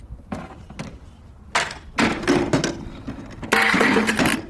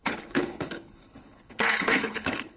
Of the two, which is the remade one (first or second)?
second